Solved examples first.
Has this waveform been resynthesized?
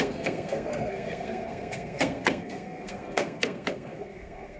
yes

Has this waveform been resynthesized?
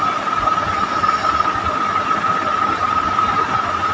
no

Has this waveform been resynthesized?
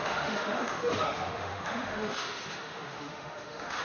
yes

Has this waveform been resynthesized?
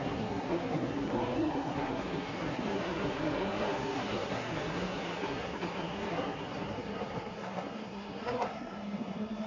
yes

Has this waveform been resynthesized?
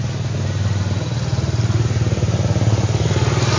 no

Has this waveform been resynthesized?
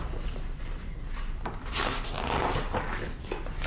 no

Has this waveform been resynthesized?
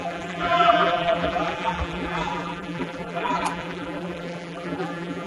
yes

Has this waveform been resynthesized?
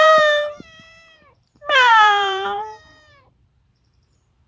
yes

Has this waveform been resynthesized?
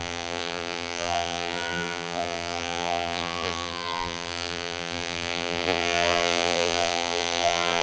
yes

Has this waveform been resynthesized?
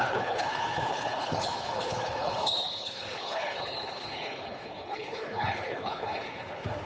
yes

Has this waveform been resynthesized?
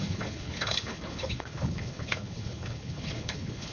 yes